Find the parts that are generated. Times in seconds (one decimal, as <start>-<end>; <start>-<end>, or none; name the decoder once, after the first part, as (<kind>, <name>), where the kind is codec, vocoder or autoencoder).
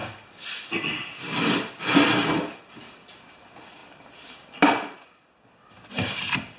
none